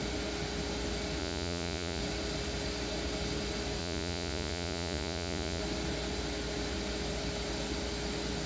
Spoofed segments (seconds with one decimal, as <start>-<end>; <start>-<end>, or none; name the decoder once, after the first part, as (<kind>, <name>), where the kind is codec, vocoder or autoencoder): 1.2-2.0 (vocoder, Vocos); 3.8-5.6